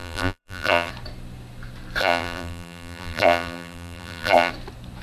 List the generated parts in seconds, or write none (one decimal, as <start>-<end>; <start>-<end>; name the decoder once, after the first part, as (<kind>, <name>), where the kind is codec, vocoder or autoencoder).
0.0-0.9 (vocoder, BigVGAN v2); 2.0-4.5